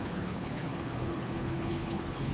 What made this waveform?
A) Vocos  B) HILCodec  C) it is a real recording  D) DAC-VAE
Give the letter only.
B